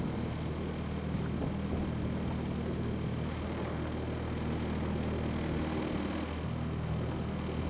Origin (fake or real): real